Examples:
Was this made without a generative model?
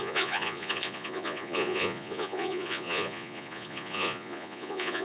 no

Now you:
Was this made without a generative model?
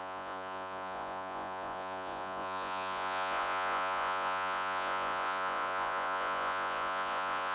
no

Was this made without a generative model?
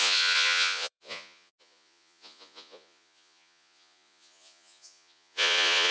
no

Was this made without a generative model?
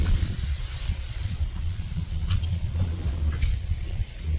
no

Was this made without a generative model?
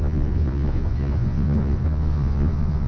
no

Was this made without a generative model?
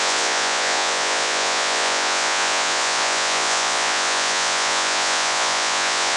no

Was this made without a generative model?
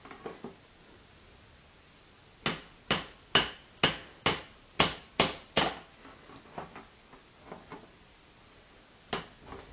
yes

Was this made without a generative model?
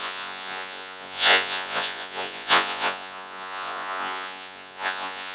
no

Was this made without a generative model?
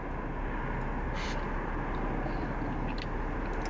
yes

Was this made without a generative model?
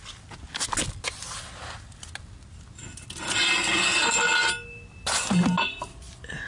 yes